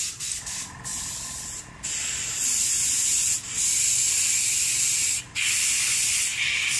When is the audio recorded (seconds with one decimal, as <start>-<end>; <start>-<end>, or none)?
0.0-0.9; 1.7-6.8